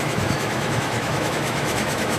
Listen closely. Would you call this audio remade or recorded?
remade